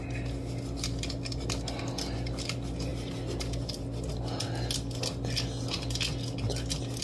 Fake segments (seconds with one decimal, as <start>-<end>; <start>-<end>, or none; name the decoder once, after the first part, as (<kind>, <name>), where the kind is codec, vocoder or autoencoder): none